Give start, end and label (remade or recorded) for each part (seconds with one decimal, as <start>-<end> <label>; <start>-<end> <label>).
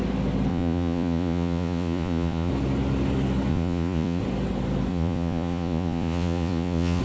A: 0.0-0.5 recorded; 0.5-2.5 remade; 2.5-3.5 recorded; 3.5-4.2 remade; 4.2-4.9 recorded; 4.9-7.0 remade